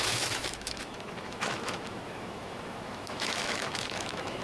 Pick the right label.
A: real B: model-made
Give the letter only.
B